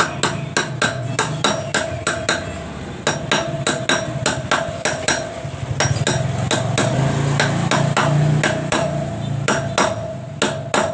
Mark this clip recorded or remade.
recorded